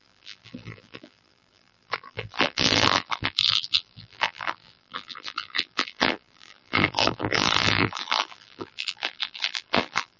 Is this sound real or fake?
fake